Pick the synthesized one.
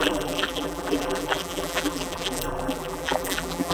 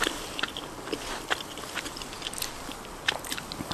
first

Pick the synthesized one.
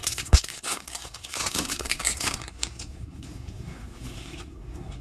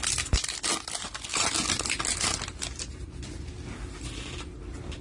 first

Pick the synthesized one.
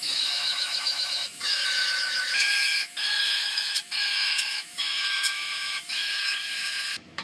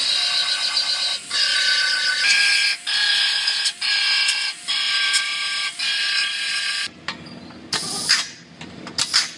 first